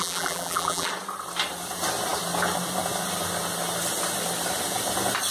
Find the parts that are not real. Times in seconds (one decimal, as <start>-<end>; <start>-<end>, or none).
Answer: 0.0-0.9